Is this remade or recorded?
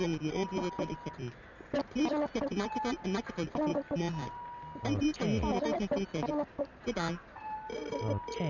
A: recorded